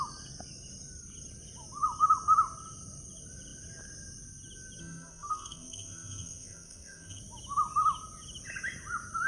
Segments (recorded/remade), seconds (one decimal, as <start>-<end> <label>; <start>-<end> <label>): 0.0-4.8 recorded; 4.8-7.2 remade; 7.2-9.3 recorded